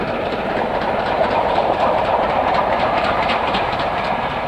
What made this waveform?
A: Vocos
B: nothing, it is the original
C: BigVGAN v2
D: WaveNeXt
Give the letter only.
C